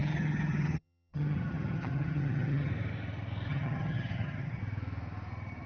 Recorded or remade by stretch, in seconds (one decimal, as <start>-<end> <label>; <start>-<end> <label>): 0.0-2.7 remade; 2.7-3.5 recorded; 3.5-4.6 remade; 4.6-5.7 recorded